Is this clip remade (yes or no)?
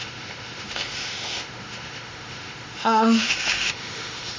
yes